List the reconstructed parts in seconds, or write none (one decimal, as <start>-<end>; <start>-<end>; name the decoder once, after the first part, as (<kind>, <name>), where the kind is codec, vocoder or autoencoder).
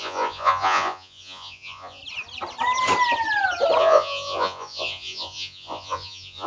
0.0-2.0 (vocoder, Vocos); 3.8-6.5